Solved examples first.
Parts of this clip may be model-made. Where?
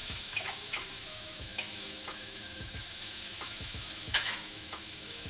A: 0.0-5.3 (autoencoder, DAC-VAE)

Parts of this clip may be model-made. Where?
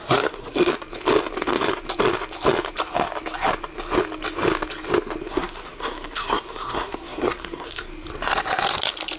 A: 0.0-0.7 (codec, SNAC); 5.3-7.9